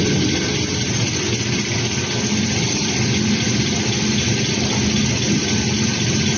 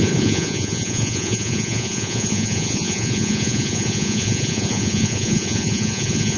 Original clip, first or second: first